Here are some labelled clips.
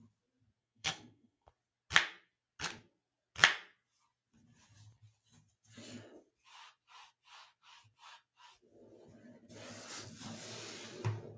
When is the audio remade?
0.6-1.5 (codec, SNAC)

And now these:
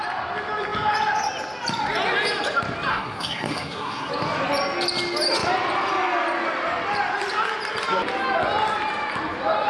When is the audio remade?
2.9-4.1 (codec, SNAC)